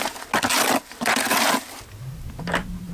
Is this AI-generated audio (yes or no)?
no